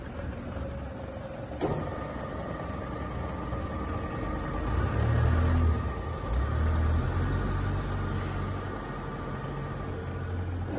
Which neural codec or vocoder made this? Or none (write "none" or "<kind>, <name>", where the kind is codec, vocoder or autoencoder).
none